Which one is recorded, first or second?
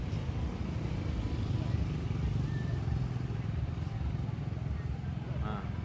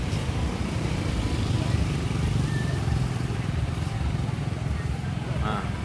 first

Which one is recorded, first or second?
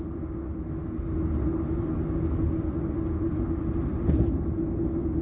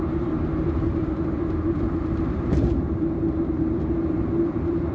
first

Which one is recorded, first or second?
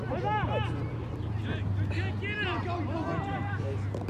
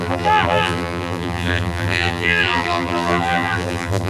first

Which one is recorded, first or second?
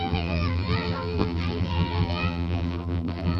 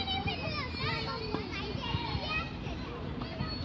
second